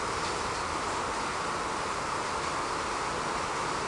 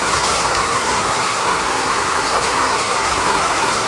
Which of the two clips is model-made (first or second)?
second